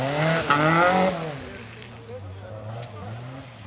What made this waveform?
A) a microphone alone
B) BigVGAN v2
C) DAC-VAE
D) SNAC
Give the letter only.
A